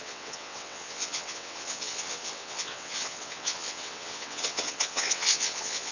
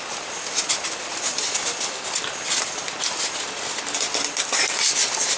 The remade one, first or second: first